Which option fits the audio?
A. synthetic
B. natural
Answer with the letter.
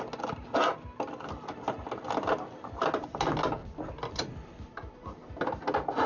B